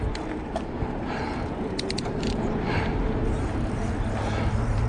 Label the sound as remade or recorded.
remade